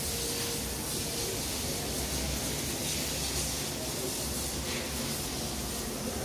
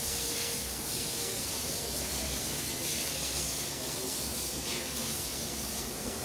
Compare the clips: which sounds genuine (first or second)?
first